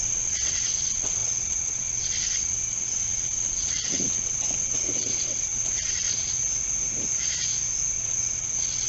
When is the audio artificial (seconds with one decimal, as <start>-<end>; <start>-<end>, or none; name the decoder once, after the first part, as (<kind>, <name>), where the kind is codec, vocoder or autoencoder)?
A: 0.0-6.4 (vocoder, WaveNeXt); 7.9-8.9